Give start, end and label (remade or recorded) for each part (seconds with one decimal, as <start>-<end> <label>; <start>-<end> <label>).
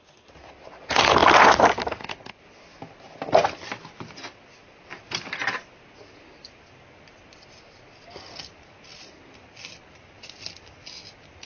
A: 0.0-11.4 recorded